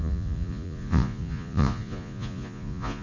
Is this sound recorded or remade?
remade